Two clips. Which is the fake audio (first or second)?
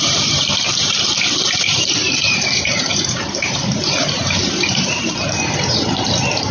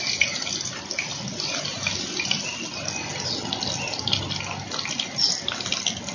first